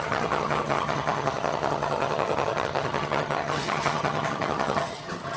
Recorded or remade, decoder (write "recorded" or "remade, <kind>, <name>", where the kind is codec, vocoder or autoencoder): remade, vocoder, HiFi-GAN